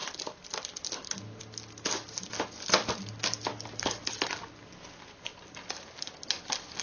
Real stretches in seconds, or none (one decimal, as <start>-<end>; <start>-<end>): 0.0-3.5; 4.1-6.8